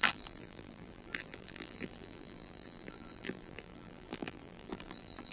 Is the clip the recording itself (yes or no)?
no